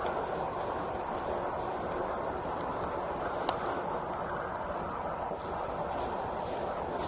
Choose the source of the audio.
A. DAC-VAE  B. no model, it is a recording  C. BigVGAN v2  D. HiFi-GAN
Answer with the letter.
B